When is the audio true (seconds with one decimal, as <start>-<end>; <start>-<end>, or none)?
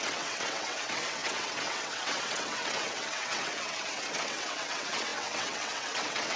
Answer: none